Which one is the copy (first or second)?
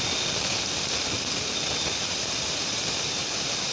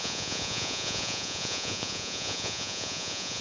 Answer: second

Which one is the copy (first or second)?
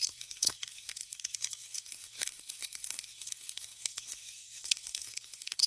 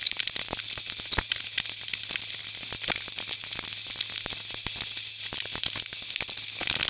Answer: first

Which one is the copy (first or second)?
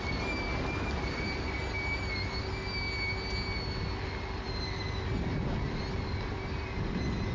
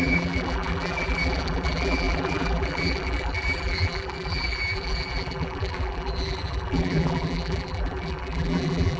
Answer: second